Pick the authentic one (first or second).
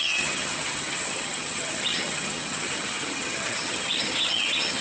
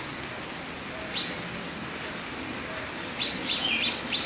second